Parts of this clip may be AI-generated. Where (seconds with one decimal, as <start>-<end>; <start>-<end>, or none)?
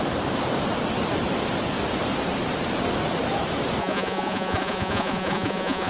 3.8-5.9